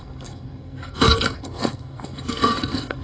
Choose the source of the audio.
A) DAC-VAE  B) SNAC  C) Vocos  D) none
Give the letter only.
B